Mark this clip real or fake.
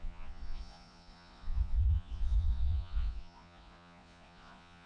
fake